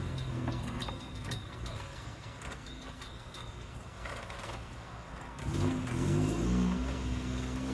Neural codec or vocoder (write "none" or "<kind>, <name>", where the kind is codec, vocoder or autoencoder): codec, SNAC